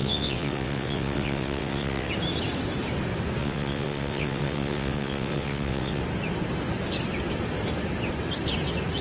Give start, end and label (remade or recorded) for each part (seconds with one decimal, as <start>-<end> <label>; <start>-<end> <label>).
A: 0.0-2.1 remade; 2.1-3.4 recorded; 3.4-6.0 remade; 6.0-9.0 recorded